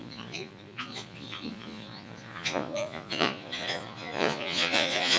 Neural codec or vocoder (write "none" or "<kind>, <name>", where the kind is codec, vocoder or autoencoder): vocoder, Vocos